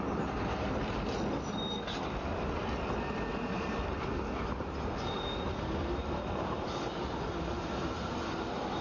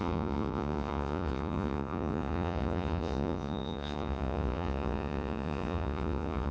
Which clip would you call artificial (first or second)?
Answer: second